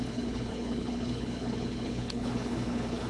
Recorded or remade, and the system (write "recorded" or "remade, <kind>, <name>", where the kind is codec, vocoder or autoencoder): remade, codec, HILCodec